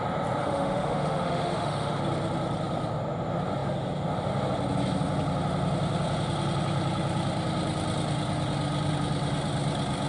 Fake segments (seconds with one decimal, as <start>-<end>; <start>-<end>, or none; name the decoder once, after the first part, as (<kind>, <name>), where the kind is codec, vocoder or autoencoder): 0.4-2.0 (autoencoder, DAC-VAE)

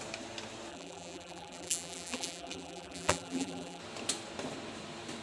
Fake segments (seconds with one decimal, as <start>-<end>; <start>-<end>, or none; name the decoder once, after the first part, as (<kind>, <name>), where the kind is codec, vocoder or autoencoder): 0.7-3.8 (vocoder, BigVGAN v2)

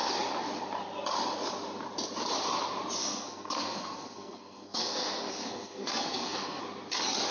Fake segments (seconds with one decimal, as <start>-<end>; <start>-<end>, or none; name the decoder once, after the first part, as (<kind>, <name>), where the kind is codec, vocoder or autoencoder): 3.0-6.6 (codec, SNAC)

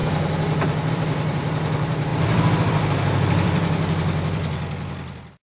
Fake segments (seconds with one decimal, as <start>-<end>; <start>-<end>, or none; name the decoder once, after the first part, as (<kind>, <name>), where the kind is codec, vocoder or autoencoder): 0.9-5.5 (vocoder, BigVGAN v2)

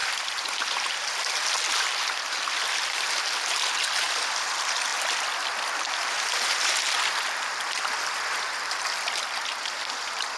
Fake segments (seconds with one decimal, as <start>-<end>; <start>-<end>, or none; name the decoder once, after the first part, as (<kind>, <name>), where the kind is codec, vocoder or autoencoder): none